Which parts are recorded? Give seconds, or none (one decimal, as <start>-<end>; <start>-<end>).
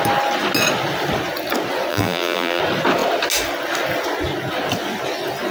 0.0-1.9; 2.6-5.5